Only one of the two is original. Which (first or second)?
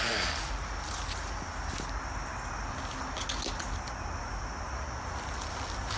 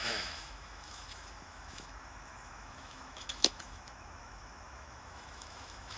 first